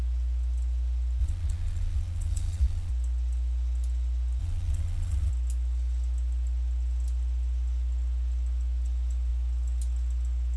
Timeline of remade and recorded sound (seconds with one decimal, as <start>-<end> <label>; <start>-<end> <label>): 0.0-1.2 recorded; 1.2-2.9 remade; 2.9-4.4 recorded; 4.4-5.3 remade; 5.3-10.6 recorded